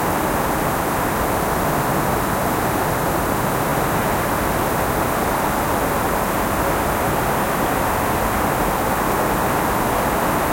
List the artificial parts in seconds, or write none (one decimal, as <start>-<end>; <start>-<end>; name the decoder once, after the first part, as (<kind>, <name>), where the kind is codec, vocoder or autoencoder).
none